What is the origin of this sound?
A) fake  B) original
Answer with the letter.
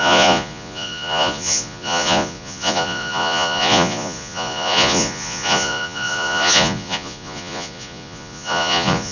A